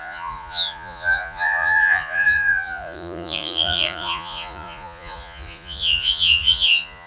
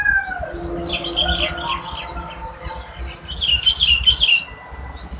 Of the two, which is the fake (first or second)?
first